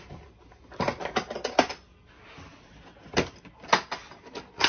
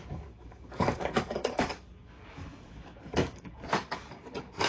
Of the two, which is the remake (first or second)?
second